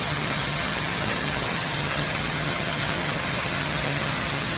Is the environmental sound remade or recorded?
remade